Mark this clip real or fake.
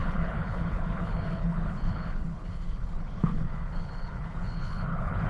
fake